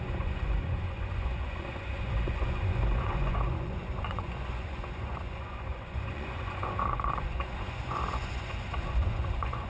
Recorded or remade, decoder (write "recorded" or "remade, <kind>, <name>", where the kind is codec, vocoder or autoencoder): remade, vocoder, Vocos